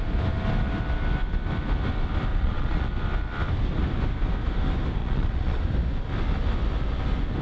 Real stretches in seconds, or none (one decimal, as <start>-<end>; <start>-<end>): 0.0-2.3; 2.9-5.0; 5.6-7.4